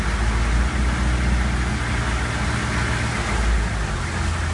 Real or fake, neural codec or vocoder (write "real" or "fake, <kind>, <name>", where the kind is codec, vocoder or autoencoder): real